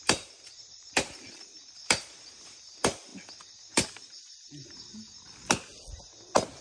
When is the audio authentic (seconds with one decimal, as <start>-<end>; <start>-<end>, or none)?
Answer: 3.1-3.7; 4.9-6.6